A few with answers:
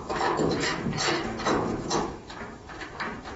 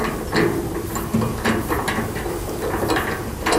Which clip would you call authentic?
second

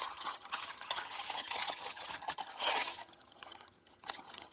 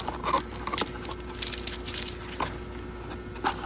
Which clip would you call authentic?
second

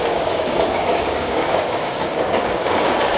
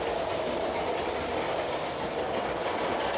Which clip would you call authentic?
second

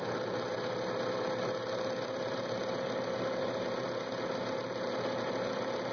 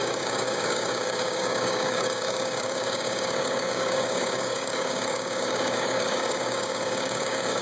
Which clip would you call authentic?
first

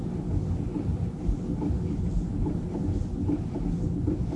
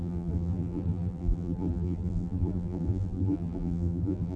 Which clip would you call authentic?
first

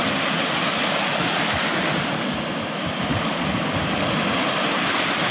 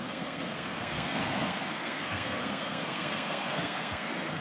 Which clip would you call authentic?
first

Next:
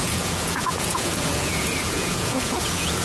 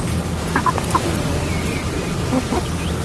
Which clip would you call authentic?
second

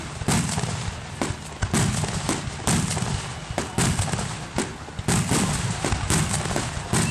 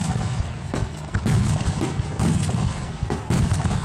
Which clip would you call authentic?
first